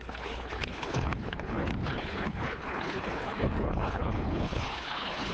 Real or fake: fake